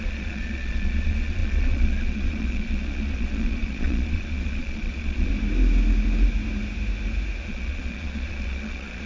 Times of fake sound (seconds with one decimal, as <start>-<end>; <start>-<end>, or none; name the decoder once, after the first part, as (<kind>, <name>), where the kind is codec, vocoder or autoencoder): 0.0-5.3 (vocoder, Vocos); 7.5-9.1